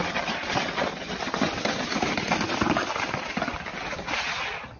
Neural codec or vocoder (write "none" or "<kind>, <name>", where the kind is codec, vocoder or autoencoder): none